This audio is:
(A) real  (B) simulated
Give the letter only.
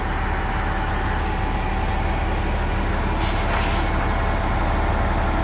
A